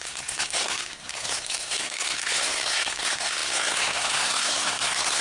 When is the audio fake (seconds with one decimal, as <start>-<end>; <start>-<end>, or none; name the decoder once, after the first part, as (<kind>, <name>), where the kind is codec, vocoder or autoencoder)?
0.0-5.2 (codec, SNAC)